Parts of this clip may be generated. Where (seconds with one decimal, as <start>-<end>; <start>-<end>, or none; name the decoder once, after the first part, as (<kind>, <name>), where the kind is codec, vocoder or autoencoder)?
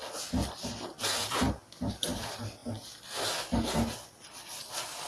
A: none